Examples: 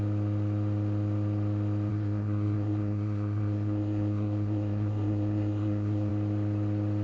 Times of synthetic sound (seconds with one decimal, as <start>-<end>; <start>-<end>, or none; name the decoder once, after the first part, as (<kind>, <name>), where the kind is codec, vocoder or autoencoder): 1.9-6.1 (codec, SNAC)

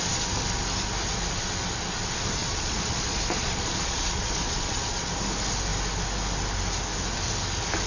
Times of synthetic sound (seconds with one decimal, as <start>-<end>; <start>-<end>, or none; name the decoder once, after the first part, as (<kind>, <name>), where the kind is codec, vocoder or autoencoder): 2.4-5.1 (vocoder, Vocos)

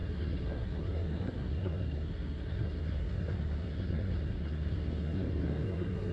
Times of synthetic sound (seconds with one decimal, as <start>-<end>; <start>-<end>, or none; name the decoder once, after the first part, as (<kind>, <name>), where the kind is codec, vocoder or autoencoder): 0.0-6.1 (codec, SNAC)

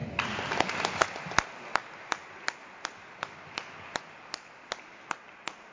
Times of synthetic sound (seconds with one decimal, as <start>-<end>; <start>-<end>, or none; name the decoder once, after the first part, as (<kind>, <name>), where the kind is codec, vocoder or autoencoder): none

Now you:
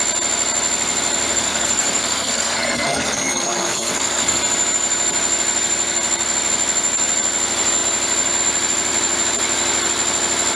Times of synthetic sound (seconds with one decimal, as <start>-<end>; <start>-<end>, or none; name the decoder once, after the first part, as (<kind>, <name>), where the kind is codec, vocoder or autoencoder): 1.3-4.4 (codec, SNAC)

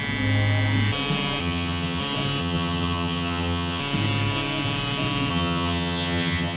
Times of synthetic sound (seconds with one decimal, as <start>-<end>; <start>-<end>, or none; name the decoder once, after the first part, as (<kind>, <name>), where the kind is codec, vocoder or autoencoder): 1.4-2.0 (vocoder, HiFi-GAN); 2.4-3.8; 5.3-6.6

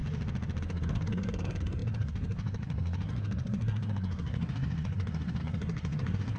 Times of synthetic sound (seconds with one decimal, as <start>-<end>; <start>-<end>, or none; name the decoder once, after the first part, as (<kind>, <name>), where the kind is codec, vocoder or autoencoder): 0.6-6.4 (codec, SNAC)